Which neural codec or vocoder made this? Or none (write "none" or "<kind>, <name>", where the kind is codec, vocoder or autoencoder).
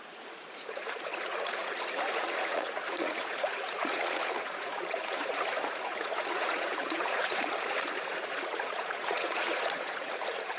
vocoder, Vocos